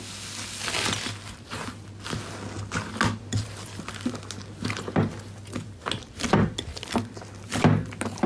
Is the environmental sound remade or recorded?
recorded